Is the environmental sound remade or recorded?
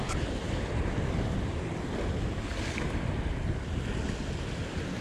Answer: recorded